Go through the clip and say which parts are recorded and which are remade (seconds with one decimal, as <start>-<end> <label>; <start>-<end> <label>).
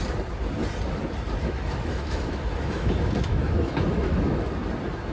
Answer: 0.0-1.4 recorded; 1.4-4.5 remade; 4.5-5.1 recorded